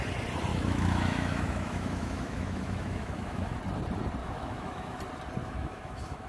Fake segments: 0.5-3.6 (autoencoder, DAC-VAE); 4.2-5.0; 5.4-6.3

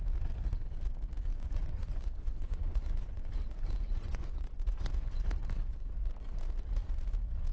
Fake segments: 1.3-4.8 (vocoder, Vocos)

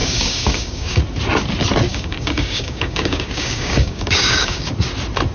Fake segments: 0.0-1.0 (codec, DAC); 1.9-4.7

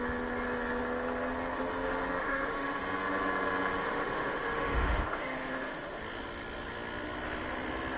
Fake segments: 2.2-2.8 (autoencoder, DAC-VAE); 3.8-6.0

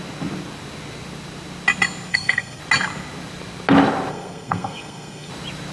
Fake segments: 2.1-2.6 (codec, SNAC); 4.1-5.3

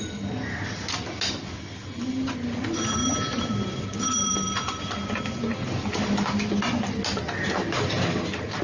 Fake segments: 3.0-5.2 (vocoder, BigVGAN v2)

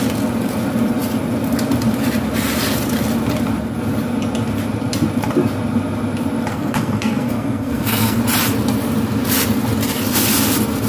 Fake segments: 6.5-8.2 (codec, SNAC)